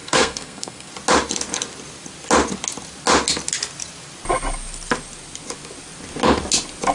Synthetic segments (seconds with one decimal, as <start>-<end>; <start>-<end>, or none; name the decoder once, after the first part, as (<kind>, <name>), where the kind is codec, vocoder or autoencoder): 0.0-0.9 (codec, SNAC)